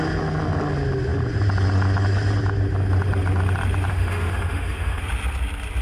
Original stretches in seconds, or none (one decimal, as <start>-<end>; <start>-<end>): 0.0-3.9; 5.0-5.8